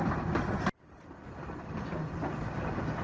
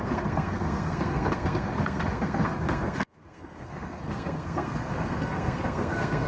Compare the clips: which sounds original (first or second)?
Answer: first